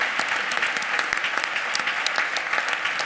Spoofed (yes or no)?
no